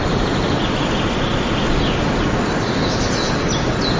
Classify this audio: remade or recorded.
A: recorded